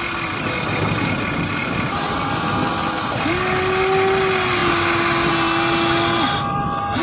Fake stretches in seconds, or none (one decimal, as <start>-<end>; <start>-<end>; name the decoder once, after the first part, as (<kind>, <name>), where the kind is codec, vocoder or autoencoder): none